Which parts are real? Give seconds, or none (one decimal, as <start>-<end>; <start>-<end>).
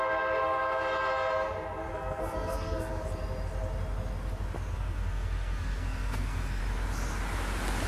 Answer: 0.0-1.9; 3.0-4.7; 6.6-7.9